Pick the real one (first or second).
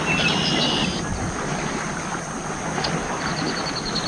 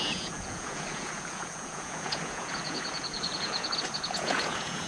first